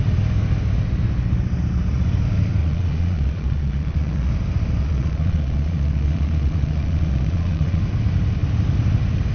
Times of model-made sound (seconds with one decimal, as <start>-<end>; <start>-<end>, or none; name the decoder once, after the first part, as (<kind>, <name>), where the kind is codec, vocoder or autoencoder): 2.6-4.3 (vocoder, Vocos); 4.8-7.8

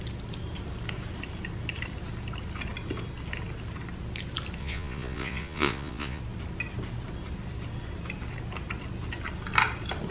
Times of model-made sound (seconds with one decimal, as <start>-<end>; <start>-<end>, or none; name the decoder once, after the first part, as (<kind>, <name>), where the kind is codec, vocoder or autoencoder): 4.6-6.2 (vocoder, Vocos)

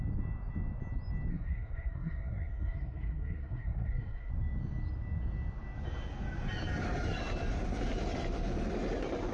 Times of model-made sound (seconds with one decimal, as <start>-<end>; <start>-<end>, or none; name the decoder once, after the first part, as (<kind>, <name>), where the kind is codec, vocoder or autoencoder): 1.3-4.3 (codec, SNAC)

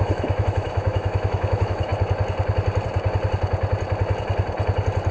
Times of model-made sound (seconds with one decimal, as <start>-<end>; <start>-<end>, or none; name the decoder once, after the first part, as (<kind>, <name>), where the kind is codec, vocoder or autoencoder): 0.0-1.9 (autoencoder, DAC-VAE)

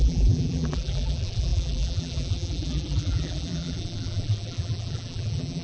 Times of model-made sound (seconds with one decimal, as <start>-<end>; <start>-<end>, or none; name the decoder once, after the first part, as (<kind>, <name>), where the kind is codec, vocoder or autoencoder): 0.0-5.6 (vocoder, BigVGAN v2)